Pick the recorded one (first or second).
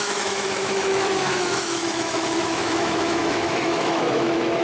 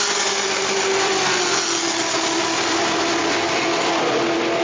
second